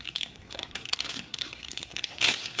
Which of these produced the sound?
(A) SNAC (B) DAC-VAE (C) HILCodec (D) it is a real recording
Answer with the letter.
A